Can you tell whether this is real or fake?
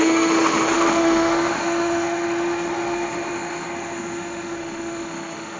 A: fake